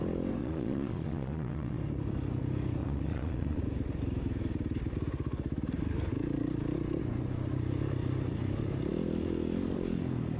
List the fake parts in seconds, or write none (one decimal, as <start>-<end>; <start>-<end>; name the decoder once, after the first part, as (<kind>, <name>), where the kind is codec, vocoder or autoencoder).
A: 0.4-1.8 (vocoder, Vocos); 2.8-3.6